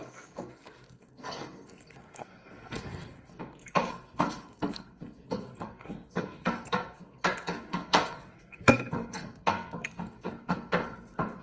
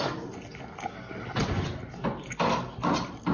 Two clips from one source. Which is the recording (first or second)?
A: second